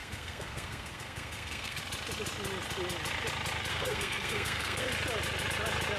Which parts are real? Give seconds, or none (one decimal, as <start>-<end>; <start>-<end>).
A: 1.8-3.7; 4.9-6.0